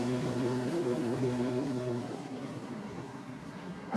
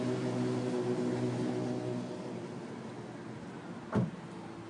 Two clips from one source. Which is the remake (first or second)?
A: first